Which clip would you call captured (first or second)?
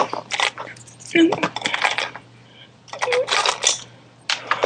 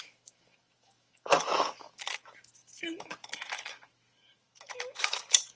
first